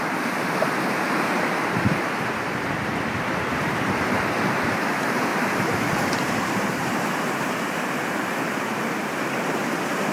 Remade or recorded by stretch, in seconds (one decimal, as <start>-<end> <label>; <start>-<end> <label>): 0.0-10.1 remade